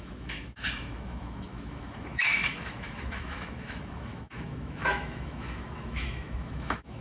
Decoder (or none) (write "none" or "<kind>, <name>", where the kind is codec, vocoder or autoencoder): autoencoder, DAC-VAE